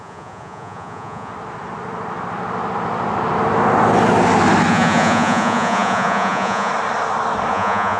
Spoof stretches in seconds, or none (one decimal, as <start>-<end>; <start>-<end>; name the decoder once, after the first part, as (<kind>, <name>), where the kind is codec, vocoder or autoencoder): 0.0-1.3 (vocoder, Vocos); 4.7-6.7; 7.5-8.0